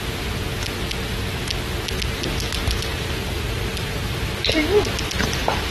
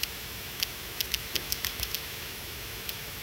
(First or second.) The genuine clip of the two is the first